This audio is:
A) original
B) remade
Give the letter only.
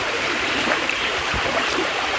B